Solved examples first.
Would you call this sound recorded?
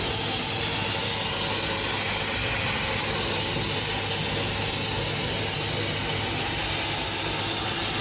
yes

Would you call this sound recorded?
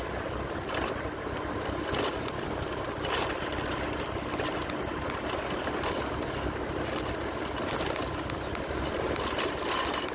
yes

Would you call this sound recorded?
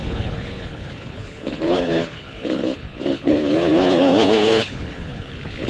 no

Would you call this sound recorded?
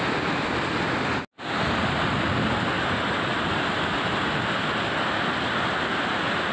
yes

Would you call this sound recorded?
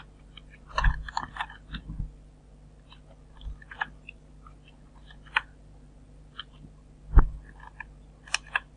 yes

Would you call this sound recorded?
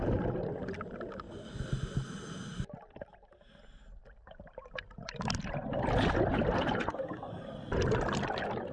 yes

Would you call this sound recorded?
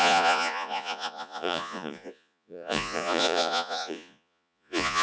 no